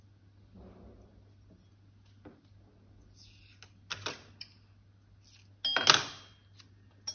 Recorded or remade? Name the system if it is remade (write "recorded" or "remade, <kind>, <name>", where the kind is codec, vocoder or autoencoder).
recorded